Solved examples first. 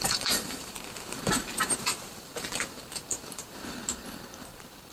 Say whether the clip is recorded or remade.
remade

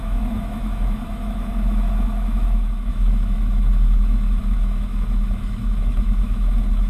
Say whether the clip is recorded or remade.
remade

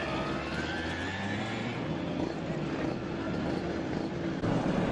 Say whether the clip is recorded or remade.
recorded